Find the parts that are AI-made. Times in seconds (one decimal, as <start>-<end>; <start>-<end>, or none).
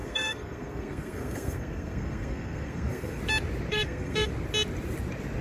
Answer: 0.0-3.2; 3.7-4.3